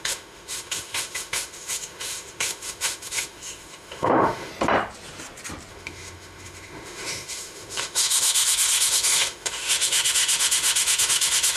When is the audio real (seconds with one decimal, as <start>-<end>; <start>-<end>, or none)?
4.5-5.7